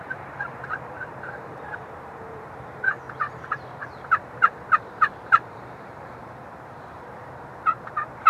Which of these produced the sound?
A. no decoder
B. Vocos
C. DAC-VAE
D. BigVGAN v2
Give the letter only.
D